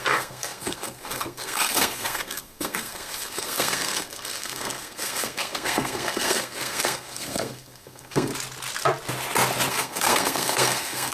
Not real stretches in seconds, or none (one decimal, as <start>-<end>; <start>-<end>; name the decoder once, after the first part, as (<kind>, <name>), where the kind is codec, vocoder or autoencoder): 0.0-8.3 (codec, SNAC); 9.7-11.1